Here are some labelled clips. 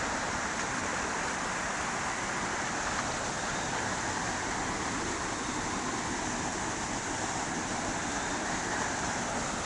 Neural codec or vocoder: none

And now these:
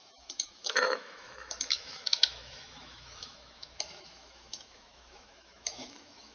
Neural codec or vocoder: autoencoder, DAC-VAE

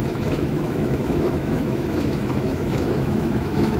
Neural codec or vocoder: autoencoder, DAC-VAE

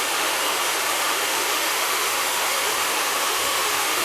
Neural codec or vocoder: autoencoder, DAC-VAE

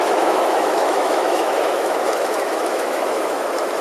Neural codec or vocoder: autoencoder, DAC-VAE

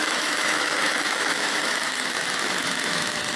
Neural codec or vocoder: autoencoder, DAC-VAE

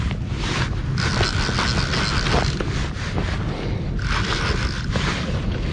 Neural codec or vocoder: none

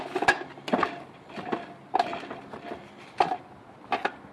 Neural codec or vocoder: none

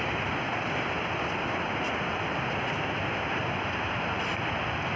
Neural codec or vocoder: none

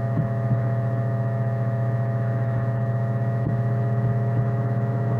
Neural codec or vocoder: autoencoder, DAC-VAE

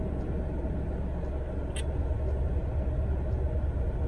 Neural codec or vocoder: none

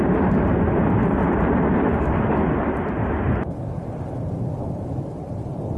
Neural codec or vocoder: none